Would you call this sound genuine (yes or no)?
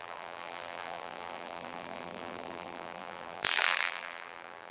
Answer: no